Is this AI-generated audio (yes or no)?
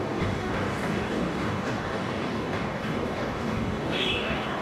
yes